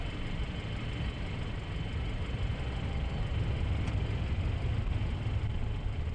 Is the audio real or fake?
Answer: real